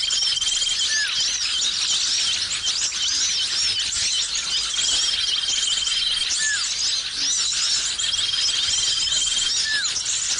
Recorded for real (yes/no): yes